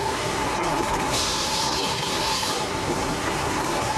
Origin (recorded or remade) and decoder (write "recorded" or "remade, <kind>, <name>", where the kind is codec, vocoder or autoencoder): remade, codec, SNAC